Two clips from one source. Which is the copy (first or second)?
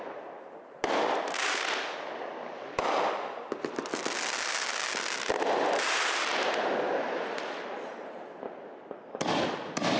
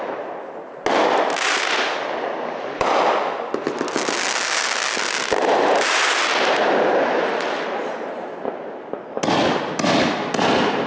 first